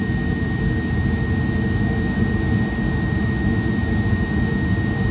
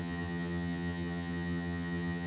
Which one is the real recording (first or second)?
first